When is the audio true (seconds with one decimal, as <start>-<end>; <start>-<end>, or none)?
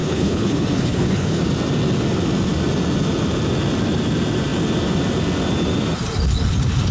1.4-6.9